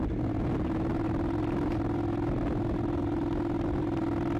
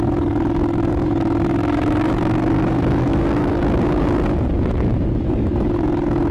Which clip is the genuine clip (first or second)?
first